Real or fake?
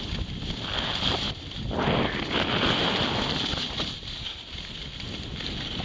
real